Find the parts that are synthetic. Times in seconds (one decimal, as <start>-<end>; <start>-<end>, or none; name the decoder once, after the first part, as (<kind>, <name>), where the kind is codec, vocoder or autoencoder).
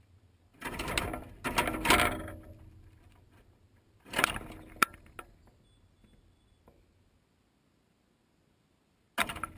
none